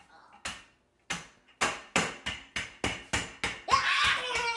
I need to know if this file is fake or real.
real